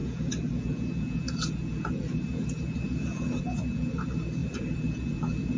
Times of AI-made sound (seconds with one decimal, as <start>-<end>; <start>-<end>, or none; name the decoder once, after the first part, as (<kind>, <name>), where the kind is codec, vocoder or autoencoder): 0.0-5.6 (vocoder, Vocos)